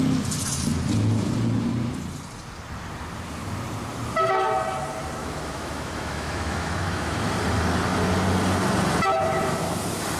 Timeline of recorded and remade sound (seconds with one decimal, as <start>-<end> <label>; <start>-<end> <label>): 0.0-5.2 recorded; 5.2-7.2 remade; 7.2-10.2 recorded